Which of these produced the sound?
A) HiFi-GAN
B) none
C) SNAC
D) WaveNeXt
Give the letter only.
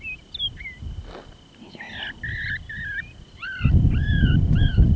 B